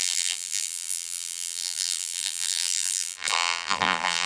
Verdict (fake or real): fake